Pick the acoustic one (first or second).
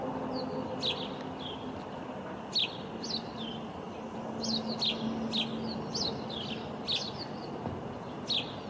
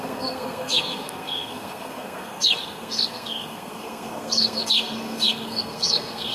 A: first